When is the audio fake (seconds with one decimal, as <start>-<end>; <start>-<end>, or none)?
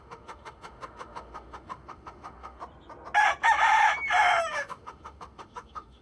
0.0-2.6; 4.5-6.0